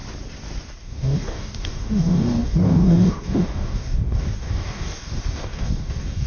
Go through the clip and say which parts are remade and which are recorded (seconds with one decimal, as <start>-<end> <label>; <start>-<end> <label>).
0.0-0.8 recorded; 0.8-6.3 remade